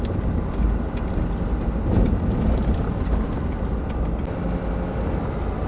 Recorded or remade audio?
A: recorded